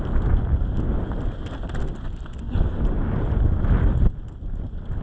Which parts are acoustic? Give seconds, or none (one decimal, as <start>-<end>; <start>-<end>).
0.0-5.0